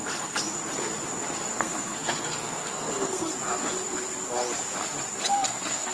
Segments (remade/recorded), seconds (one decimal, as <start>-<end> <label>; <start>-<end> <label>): 0.0-1.5 recorded; 1.5-3.3 remade; 3.3-5.3 recorded; 5.3-5.9 remade